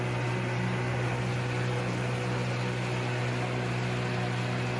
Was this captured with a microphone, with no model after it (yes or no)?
yes